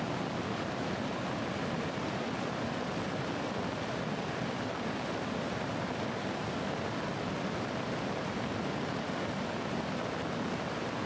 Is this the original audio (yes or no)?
yes